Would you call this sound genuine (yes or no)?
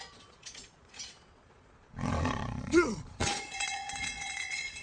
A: no